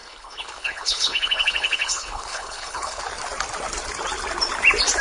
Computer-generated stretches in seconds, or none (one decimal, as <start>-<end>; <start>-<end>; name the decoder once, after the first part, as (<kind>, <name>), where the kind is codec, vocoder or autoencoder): 0.0-3.0 (codec, HILCodec)